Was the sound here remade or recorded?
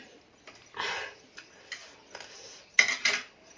recorded